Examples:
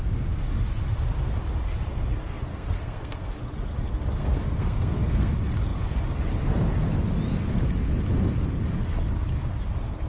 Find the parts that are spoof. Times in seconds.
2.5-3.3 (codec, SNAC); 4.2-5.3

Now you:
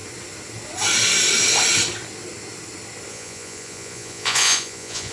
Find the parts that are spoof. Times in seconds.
3.1-5.1 (vocoder, Vocos)

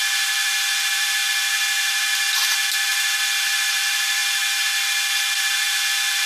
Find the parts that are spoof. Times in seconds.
0.0-1.2 (vocoder, BigVGAN v2); 2.8-4.2; 5.4-6.3

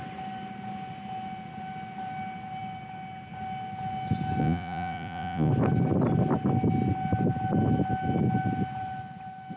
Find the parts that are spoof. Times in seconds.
4.4-5.5 (vocoder, Vocos)